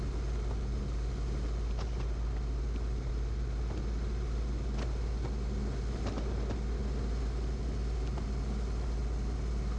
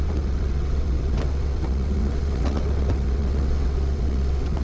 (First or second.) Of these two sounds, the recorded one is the first